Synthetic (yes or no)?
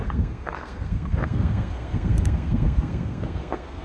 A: yes